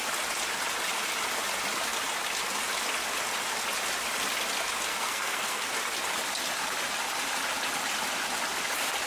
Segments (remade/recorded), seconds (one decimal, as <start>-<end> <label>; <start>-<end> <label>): 0.0-4.9 recorded; 4.9-5.7 remade; 5.7-9.1 recorded